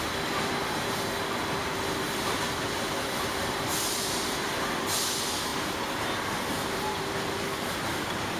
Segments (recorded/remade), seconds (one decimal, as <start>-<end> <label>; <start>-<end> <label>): 0.0-1.6 recorded; 1.6-4.5 remade; 4.5-8.4 recorded